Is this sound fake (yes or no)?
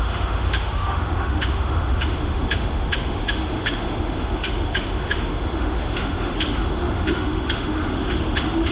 yes